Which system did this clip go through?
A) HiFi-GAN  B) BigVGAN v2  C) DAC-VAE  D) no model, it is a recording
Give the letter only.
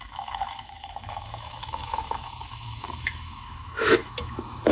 C